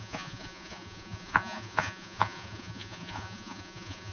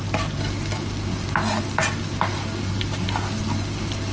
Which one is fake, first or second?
first